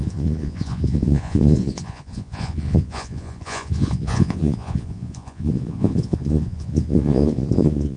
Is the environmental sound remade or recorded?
remade